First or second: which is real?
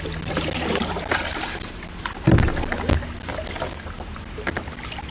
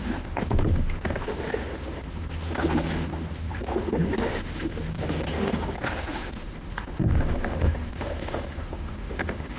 first